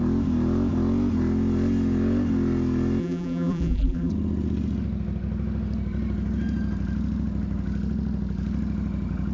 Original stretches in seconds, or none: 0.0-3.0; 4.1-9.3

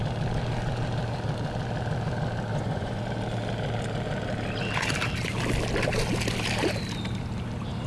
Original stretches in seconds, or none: 0.0-2.5; 3.0-7.9